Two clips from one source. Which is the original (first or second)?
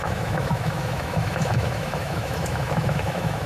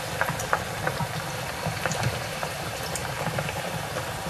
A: second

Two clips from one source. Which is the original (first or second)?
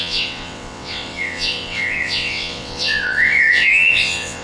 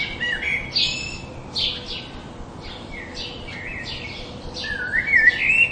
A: second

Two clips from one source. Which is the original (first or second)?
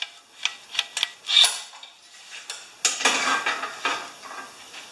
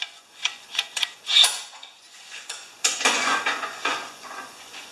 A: first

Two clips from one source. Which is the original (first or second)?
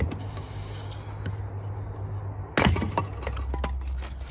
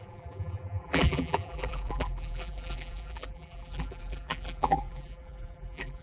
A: first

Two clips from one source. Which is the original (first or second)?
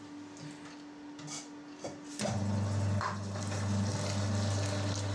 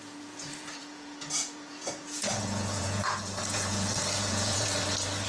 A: first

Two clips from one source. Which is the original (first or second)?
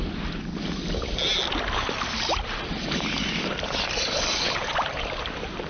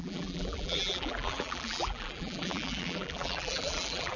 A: first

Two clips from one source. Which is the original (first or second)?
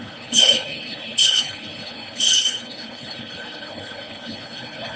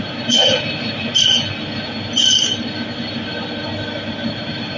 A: second